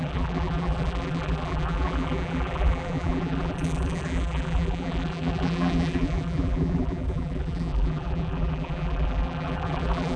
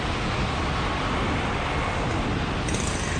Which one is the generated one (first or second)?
first